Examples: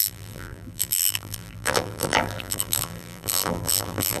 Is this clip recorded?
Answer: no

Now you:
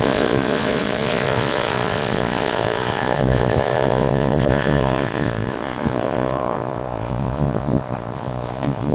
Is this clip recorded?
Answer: no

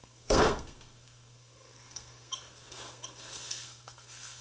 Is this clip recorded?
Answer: no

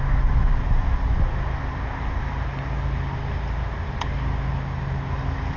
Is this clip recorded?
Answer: yes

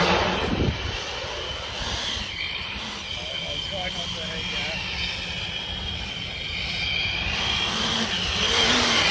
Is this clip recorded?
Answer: yes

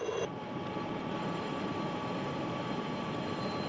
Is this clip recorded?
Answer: no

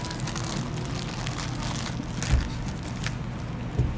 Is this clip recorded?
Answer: yes